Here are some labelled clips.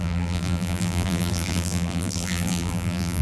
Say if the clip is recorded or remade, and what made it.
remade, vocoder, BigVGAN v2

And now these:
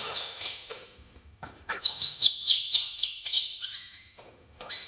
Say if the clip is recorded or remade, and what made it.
remade, autoencoder, DAC-VAE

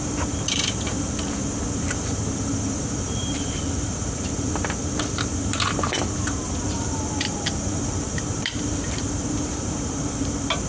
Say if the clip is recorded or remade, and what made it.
remade, vocoder, BigVGAN v2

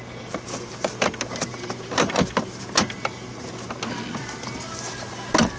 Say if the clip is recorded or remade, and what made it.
recorded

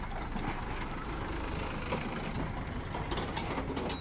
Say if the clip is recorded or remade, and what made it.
recorded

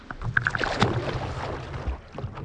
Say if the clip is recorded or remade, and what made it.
recorded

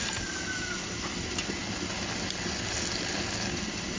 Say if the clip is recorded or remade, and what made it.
recorded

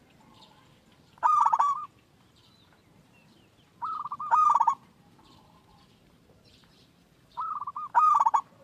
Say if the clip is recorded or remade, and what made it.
remade, vocoder, BigVGAN v2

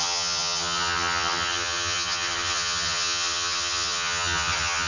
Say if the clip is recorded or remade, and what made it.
remade, vocoder, HiFi-GAN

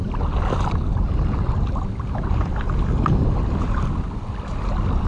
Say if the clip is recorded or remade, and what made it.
recorded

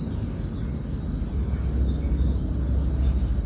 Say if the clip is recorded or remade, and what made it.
recorded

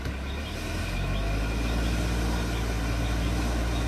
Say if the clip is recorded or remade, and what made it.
recorded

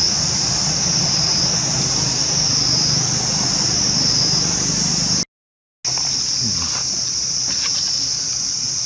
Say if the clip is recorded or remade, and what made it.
recorded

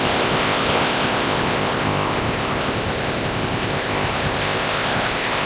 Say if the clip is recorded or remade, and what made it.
remade, codec, ZipCodec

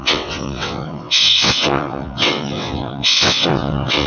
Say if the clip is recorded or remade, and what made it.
remade, vocoder, WaveNeXt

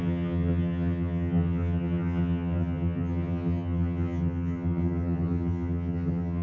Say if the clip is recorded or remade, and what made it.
remade, vocoder, HiFi-GAN